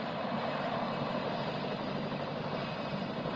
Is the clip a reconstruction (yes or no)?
no